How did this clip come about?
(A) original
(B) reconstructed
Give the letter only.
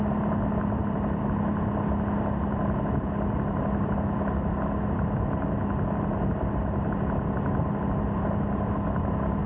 A